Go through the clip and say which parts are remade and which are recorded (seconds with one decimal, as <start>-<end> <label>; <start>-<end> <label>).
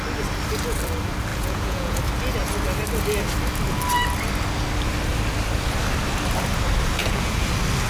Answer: 0.0-1.3 recorded; 1.3-2.0 remade; 2.0-7.0 recorded; 7.0-7.5 remade; 7.5-7.9 recorded